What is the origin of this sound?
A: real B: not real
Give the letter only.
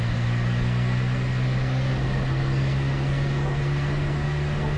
B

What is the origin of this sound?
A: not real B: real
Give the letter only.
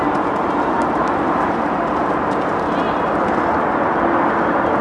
B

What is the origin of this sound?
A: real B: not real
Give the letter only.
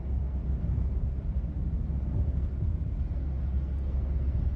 B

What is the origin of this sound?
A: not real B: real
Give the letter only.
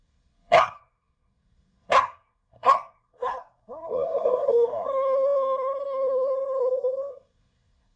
A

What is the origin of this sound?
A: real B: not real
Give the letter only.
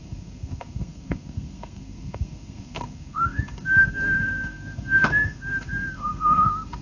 B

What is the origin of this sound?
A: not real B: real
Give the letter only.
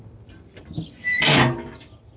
B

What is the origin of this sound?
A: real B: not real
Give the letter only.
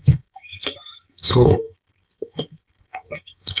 B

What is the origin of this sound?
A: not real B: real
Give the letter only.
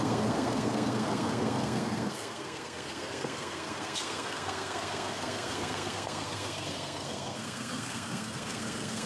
A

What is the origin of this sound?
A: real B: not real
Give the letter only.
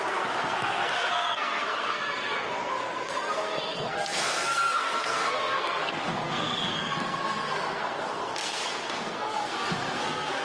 B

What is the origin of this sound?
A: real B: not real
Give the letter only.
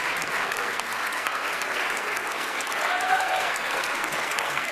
B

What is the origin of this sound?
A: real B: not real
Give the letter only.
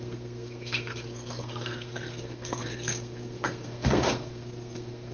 B